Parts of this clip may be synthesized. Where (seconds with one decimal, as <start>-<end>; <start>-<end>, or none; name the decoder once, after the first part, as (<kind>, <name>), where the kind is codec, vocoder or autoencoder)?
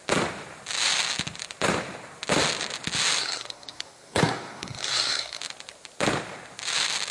3.2-5.4 (codec, SNAC)